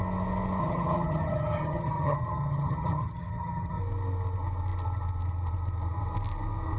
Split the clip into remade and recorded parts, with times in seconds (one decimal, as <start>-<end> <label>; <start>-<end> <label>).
0.0-0.6 recorded; 0.6-3.8 remade; 3.8-6.8 recorded